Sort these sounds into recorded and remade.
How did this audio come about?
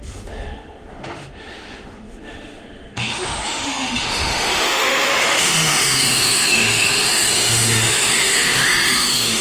remade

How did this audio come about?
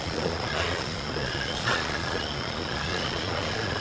remade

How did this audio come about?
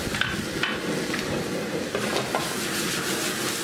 recorded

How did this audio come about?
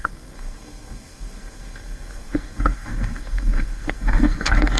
remade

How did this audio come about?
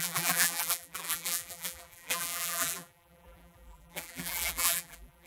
remade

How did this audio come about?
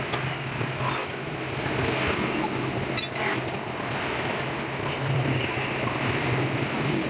recorded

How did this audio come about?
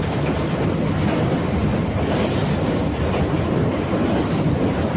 remade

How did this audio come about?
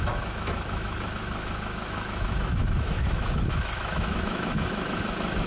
remade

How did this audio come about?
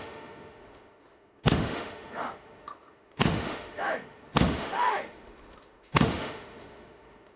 remade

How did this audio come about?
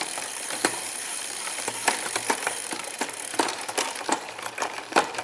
remade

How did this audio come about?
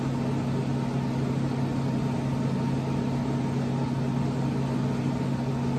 recorded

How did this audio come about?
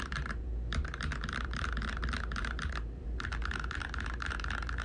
remade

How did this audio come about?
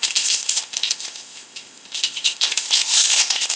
remade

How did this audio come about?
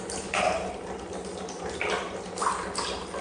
recorded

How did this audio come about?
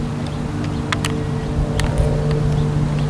recorded